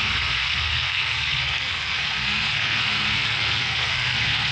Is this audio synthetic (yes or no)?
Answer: yes